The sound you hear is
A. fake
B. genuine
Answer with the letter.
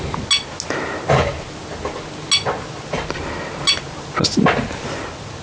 B